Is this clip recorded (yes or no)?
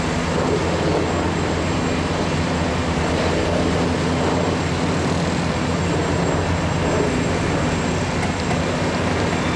yes